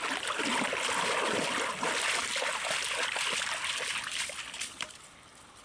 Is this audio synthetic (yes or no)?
no